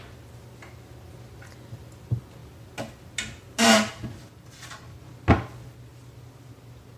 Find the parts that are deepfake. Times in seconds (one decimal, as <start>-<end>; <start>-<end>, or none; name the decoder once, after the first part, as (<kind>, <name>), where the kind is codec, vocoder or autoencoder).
none